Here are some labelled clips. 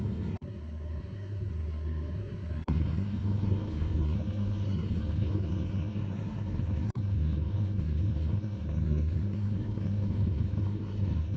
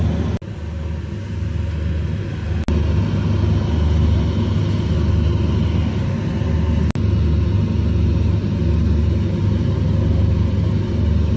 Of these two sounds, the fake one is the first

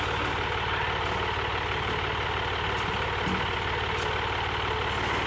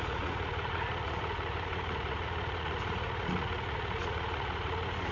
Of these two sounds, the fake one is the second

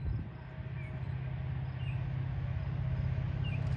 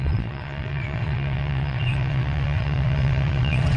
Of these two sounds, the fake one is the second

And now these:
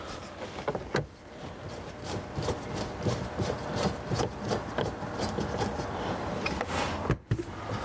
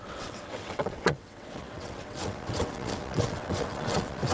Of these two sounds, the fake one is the second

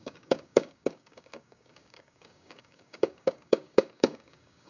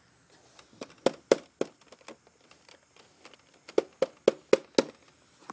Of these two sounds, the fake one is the first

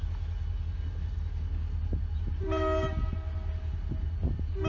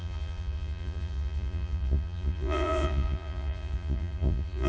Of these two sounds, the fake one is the second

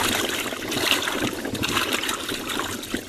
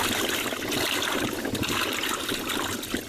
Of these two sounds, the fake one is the first